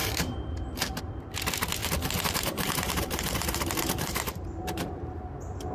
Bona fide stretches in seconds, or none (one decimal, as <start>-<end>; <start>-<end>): 1.0-1.8; 5.2-5.7